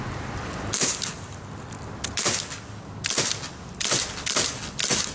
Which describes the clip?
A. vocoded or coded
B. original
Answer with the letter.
B